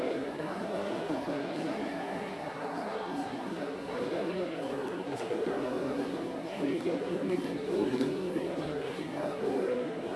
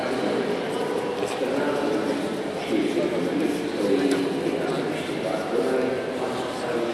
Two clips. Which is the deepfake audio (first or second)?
first